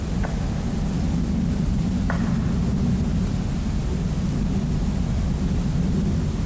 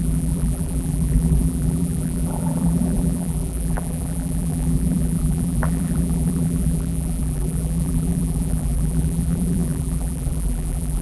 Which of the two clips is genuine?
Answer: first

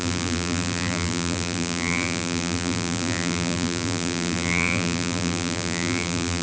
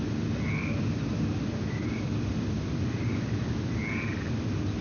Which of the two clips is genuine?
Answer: second